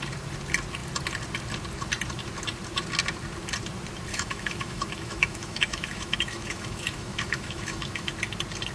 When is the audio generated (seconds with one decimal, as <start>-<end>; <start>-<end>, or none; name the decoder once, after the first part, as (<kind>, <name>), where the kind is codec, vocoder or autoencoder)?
4.1-8.1 (autoencoder, DAC-VAE)

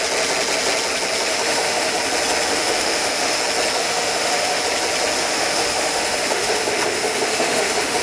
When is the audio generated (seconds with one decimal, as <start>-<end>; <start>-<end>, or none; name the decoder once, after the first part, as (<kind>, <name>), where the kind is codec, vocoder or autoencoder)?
1.3-2.0 (autoencoder, DAC-VAE); 2.5-3.4; 3.8-4.6; 5.2-8.0

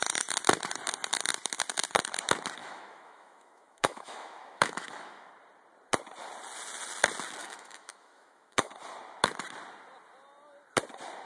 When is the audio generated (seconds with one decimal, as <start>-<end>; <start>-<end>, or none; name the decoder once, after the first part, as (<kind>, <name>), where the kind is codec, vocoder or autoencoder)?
2.6-5.3 (autoencoder, DAC-VAE); 7.4-8.7

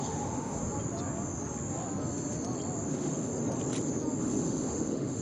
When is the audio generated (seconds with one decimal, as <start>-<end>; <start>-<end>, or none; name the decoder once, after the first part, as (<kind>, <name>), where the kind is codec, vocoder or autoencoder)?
0.0-0.6 (autoencoder, DAC-VAE); 2.9-3.3; 4.2-5.2

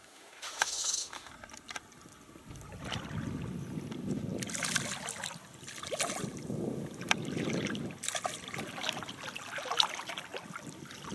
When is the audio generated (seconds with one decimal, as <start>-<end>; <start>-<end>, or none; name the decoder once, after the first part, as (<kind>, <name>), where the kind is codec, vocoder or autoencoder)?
0.0-1.3 (autoencoder, DAC-VAE)

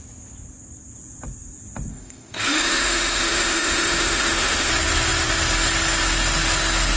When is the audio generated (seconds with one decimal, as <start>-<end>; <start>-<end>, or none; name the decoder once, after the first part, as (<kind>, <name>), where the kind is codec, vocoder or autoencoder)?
1.9-4.7 (autoencoder, DAC-VAE)

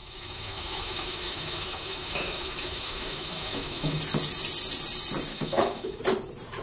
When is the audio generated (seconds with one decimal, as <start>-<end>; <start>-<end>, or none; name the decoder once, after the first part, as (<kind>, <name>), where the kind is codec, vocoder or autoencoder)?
0.0-4.0 (autoencoder, DAC-VAE); 5.3-6.0